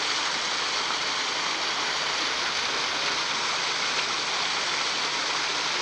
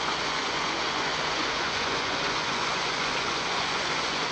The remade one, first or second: second